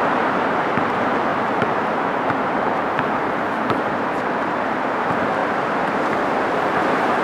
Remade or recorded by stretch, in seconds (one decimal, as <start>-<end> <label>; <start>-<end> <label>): 0.0-5.4 remade; 5.4-6.5 recorded; 6.5-7.2 remade